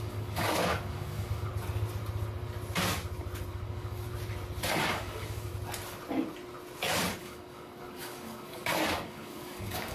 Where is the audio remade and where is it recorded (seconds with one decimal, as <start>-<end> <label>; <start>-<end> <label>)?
0.0-1.5 remade; 1.5-3.5 recorded; 3.5-4.1 remade; 4.1-4.7 recorded; 4.7-5.5 remade; 5.5-7.2 recorded; 7.2-9.9 remade